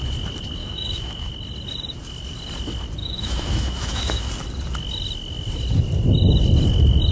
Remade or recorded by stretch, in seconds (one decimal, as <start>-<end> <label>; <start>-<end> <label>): 0.0-0.6 recorded; 0.6-1.3 remade; 1.3-3.0 recorded; 3.0-4.3 remade; 4.3-7.1 recorded